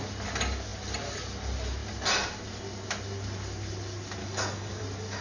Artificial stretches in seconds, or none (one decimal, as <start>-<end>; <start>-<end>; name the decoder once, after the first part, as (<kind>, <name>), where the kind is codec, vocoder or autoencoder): 4.2-4.8 (codec, DAC)